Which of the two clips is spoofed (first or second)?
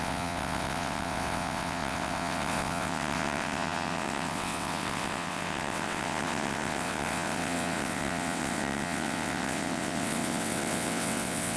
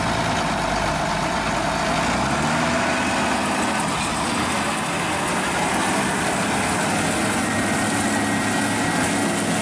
first